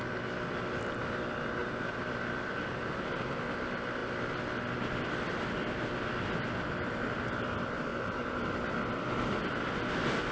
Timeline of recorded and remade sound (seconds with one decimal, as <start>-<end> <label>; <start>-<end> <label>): 0.0-1.6 recorded; 1.6-3.2 remade; 3.2-7.9 recorded; 7.9-8.4 remade; 8.4-10.3 recorded